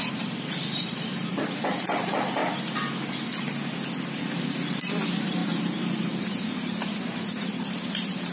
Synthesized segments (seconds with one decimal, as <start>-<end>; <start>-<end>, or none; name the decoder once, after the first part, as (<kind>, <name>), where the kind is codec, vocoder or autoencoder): 0.0-2.4 (vocoder, BigVGAN v2); 4.2-8.3